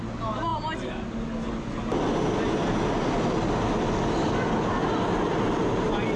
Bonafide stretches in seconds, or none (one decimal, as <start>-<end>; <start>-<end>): 0.0-6.2